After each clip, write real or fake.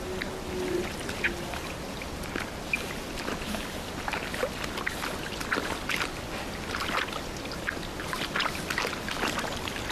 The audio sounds real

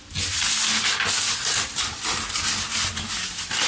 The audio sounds real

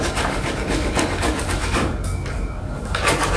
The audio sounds fake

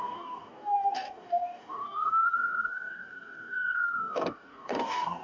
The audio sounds fake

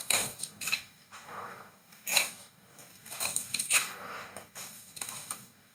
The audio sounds fake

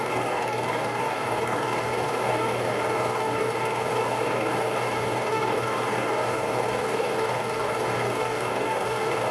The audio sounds fake